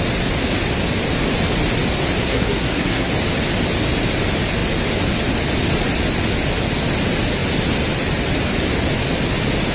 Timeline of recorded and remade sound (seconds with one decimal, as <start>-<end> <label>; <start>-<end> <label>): 0.0-2.2 recorded; 2.2-3.1 remade; 3.1-9.7 recorded